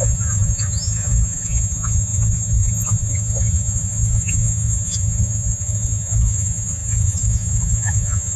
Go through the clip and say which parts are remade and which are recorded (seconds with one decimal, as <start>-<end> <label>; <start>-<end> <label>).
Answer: 0.0-8.4 remade